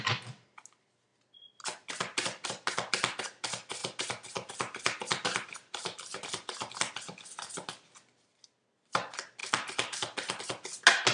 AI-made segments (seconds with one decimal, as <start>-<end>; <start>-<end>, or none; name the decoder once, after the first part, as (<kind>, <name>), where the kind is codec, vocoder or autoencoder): 3.8-6.7 (vocoder, BigVGAN v2); 9.4-10.4